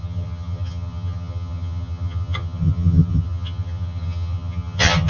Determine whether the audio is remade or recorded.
remade